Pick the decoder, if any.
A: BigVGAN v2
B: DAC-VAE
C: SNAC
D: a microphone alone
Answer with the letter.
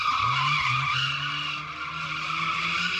D